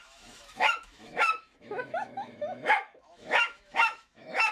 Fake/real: fake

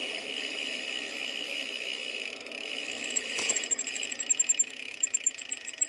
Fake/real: fake